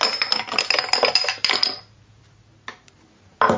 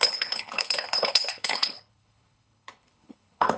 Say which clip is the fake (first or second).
second